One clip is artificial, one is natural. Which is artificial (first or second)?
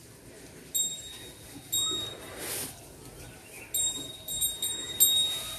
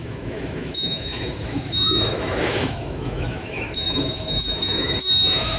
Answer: second